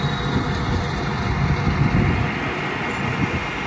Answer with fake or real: real